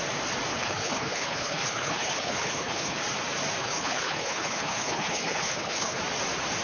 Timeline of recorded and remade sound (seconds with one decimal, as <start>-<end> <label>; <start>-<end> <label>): 0.0-0.5 recorded; 0.5-3.0 remade; 3.0-3.6 recorded; 3.6-6.0 remade; 6.0-6.6 recorded